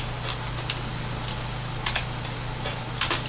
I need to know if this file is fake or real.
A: real